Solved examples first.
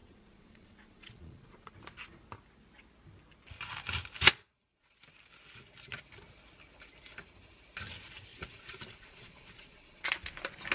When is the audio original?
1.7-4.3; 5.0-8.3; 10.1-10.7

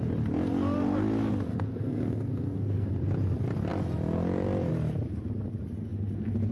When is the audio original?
0.0-1.5; 2.9-6.5

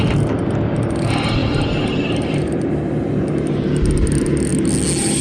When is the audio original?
0.0-1.4; 3.0-5.2

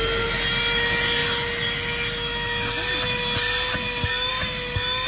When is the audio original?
0.0-5.1